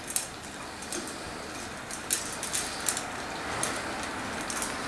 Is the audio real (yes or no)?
yes